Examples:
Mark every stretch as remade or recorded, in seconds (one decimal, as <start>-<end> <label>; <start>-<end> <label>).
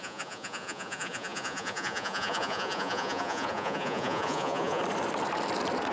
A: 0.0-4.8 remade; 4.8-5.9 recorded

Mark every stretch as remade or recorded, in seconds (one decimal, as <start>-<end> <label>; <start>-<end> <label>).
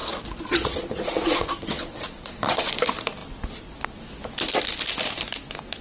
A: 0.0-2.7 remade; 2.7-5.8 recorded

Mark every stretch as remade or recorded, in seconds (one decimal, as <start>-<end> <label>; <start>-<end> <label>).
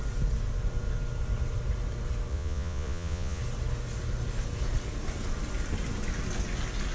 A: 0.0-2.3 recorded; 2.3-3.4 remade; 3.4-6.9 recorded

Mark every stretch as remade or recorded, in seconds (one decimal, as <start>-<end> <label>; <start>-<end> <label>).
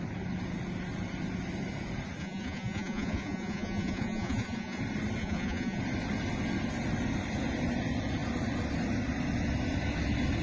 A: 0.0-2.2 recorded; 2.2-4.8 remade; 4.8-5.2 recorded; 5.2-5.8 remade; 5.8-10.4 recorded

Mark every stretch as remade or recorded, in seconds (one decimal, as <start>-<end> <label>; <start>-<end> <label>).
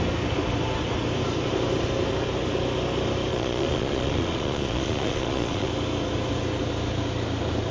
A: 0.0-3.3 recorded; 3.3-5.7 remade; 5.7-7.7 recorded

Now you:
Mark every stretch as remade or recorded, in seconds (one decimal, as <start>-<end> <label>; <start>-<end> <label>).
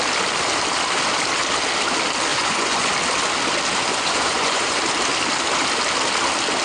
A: 0.0-2.3 recorded; 2.3-2.9 remade; 2.9-3.9 recorded; 3.9-4.8 remade; 4.8-6.6 recorded